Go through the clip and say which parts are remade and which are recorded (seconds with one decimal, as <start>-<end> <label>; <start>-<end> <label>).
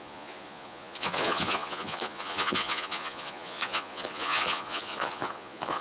0.0-5.8 remade